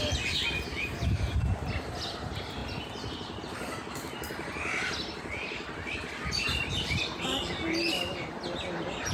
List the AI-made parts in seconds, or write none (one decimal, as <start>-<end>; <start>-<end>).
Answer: none